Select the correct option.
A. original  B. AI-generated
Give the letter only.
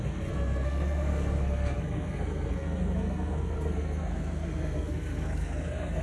B